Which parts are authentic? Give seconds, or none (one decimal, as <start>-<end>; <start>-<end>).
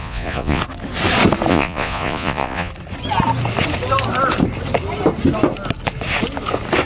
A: 0.6-1.5; 2.7-6.9